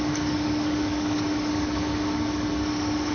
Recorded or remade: remade